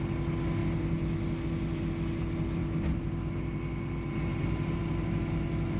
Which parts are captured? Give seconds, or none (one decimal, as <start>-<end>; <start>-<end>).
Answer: 0.0-4.2; 5.2-5.8

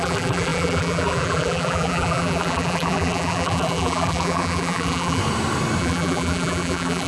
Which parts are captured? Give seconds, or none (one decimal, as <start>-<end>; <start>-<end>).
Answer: 5.2-5.8

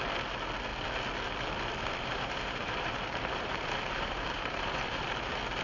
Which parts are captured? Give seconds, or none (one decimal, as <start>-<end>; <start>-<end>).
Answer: 0.0-2.1; 5.1-5.6

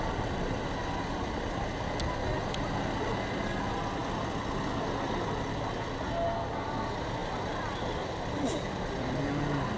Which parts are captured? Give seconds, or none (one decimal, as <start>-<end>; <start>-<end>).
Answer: 0.0-7.2; 9.2-9.8

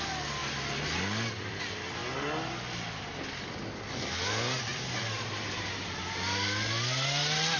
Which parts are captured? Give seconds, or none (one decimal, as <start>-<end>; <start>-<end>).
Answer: 0.0-0.4; 1.0-4.7; 6.1-7.6

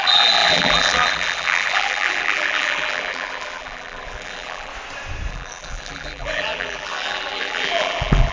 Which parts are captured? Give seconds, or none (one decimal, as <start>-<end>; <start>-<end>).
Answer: 4.7-5.3